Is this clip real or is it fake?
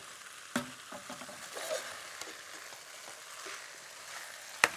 real